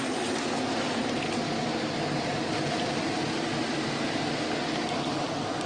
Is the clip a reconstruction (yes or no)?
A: no